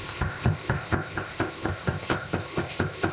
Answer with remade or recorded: remade